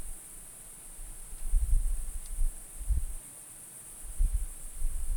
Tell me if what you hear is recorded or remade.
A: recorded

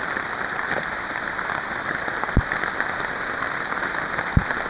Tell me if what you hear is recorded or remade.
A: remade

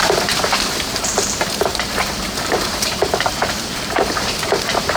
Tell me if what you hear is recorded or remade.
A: remade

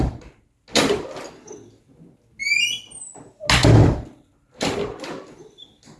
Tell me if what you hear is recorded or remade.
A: recorded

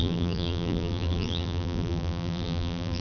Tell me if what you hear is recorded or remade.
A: remade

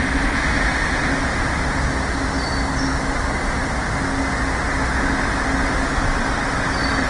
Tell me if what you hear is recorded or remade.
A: recorded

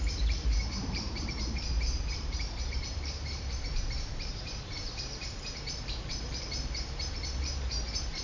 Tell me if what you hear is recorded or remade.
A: remade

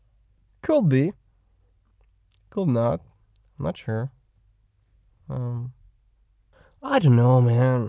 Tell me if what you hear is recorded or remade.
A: recorded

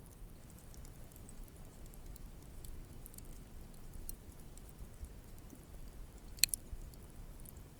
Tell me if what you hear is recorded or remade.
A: remade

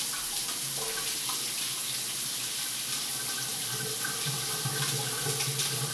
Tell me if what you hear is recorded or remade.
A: recorded